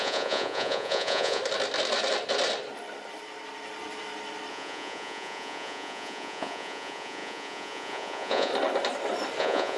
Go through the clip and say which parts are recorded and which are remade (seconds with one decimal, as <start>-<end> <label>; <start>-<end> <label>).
0.0-1.4 remade; 1.4-4.5 recorded; 4.5-8.5 remade; 8.5-9.4 recorded; 9.4-9.8 remade